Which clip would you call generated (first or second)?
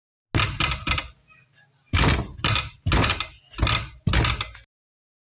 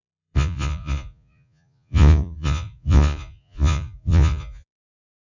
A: second